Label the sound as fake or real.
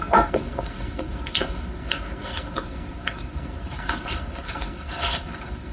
fake